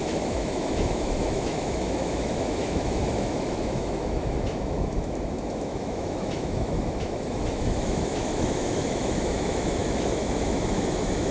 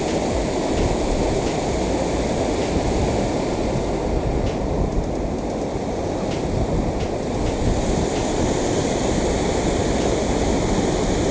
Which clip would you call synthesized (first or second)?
first